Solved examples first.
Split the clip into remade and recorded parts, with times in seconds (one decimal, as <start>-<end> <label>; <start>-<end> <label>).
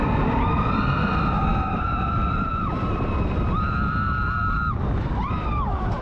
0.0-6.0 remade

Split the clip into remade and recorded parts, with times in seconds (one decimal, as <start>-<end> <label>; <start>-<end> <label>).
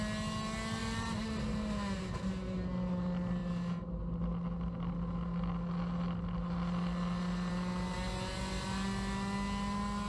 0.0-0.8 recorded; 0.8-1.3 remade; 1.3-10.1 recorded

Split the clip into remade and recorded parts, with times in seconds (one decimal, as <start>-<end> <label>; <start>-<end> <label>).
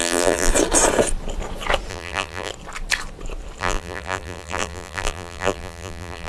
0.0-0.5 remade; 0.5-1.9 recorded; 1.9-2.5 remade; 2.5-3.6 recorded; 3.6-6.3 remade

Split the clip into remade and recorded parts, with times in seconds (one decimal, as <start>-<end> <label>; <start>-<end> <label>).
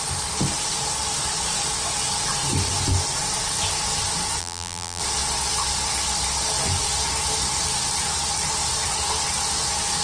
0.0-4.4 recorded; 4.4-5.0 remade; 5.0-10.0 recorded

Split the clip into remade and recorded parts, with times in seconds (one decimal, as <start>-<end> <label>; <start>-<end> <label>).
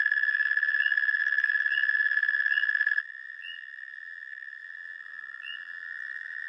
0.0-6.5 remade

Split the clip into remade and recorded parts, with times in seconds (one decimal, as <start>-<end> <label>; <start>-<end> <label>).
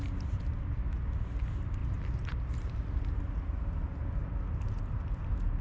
0.0-5.6 recorded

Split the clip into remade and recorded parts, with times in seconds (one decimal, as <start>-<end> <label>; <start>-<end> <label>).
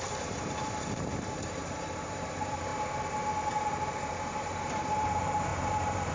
0.0-2.7 remade; 2.7-3.6 recorded; 3.6-6.1 remade